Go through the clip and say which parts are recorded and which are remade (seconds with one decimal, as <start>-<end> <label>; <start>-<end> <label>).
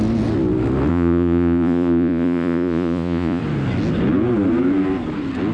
0.0-0.9 recorded; 0.9-3.4 remade; 3.4-5.5 recorded